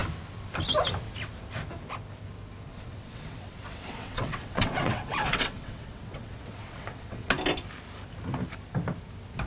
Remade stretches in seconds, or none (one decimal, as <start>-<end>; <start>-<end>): 2.7-7.3